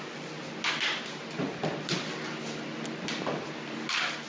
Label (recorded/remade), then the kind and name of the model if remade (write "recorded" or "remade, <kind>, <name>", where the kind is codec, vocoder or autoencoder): recorded